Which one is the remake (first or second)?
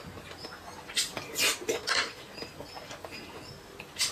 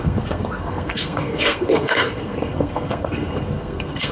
second